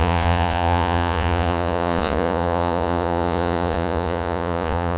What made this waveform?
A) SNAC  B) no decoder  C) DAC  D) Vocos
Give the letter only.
D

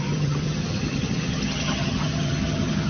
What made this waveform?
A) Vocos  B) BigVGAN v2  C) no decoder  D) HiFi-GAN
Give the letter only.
D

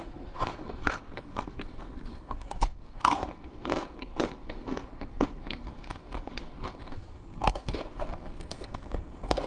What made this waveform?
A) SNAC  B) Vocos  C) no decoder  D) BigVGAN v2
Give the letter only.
A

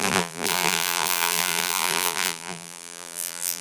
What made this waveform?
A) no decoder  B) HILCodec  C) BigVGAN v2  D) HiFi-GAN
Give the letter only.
C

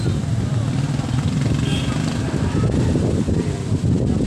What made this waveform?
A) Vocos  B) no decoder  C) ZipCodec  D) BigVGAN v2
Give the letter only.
D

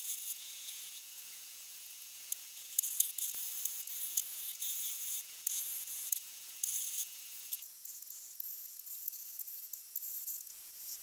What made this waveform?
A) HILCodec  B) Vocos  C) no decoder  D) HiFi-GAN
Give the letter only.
B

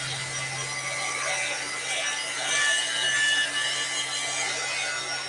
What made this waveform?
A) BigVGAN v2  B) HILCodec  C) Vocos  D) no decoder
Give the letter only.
D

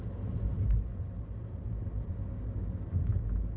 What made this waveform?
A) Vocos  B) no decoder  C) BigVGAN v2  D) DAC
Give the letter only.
B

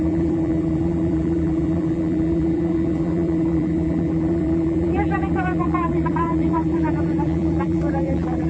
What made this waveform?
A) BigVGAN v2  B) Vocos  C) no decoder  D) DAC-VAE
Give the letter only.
A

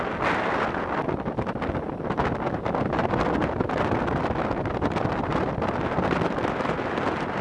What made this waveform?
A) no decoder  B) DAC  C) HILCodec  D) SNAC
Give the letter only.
A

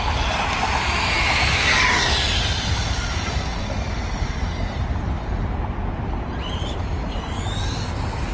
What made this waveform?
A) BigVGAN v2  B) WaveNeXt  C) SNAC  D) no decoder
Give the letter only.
D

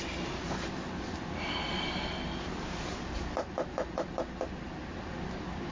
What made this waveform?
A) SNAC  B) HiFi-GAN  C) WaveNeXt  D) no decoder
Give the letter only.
D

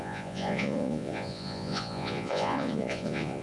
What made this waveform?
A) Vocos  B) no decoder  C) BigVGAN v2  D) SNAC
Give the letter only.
A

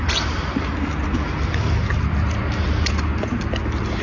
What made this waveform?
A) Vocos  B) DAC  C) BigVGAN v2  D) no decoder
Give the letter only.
D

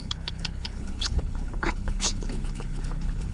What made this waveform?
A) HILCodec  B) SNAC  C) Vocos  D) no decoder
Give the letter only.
A